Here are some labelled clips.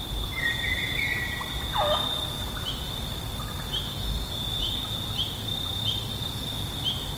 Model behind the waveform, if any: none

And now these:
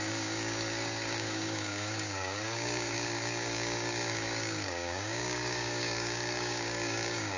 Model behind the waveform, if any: codec, DAC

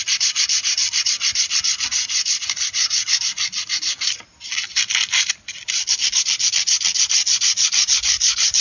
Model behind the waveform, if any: none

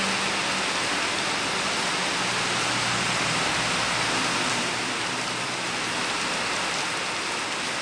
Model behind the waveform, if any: none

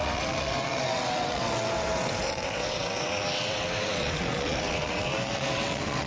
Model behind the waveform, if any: vocoder, WaveNeXt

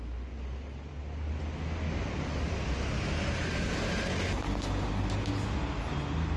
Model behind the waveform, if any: none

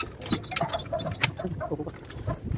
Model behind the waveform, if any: none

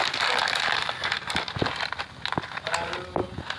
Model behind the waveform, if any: none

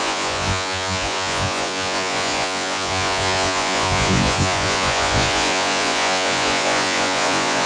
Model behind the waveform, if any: vocoder, Vocos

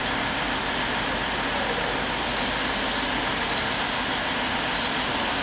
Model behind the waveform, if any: none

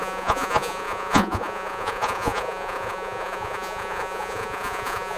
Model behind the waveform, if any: vocoder, Vocos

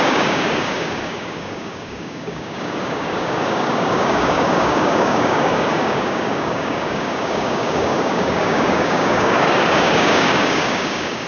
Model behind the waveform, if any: codec, DAC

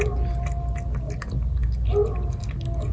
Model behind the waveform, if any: none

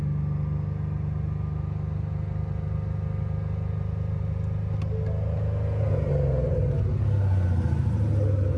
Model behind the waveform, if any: none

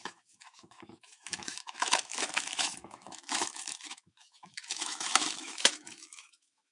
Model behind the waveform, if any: autoencoder, DAC-VAE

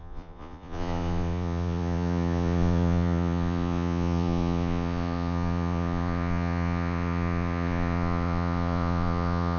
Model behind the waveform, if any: vocoder, Vocos